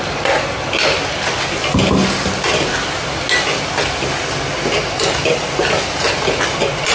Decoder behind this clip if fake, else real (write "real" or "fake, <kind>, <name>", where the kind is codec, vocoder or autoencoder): real